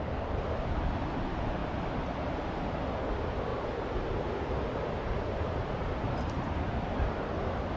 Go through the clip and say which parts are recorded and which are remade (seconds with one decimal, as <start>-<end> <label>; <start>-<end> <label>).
0.0-1.6 recorded; 1.6-2.2 remade; 2.2-7.8 recorded